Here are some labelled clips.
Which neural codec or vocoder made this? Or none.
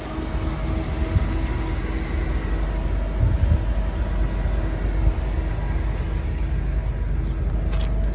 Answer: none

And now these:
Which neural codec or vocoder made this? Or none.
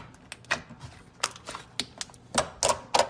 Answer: none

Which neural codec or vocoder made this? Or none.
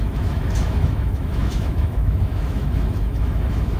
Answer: autoencoder, DAC-VAE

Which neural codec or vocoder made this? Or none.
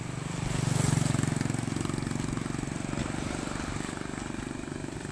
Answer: none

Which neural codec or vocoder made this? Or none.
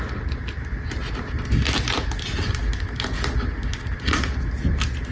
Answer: none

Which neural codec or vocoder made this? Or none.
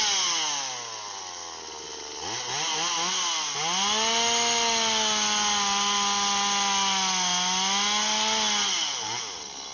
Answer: none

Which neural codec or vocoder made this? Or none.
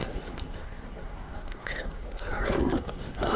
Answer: codec, SNAC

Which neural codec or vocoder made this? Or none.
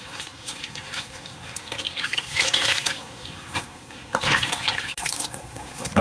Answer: codec, SNAC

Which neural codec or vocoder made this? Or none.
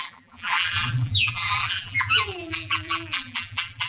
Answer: vocoder, BigVGAN v2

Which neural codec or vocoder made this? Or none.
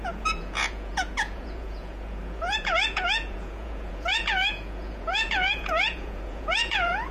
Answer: vocoder, Vocos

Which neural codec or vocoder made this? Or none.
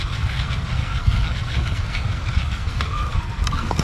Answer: codec, SNAC